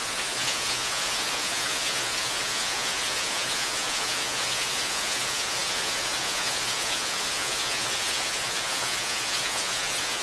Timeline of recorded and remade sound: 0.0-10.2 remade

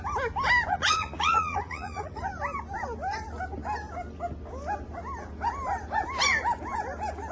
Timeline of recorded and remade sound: 0.0-0.7 recorded; 0.7-2.2 remade; 2.2-7.3 recorded

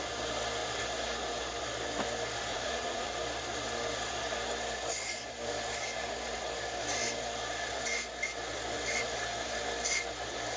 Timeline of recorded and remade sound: 0.0-2.5 recorded; 2.5-3.1 remade; 3.1-10.6 recorded

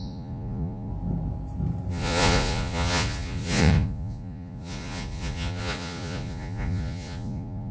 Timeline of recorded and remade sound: 0.0-0.9 remade; 0.9-1.9 recorded; 1.9-7.7 remade